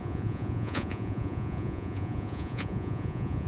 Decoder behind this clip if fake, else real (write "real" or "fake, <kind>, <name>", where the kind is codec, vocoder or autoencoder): fake, vocoder, Vocos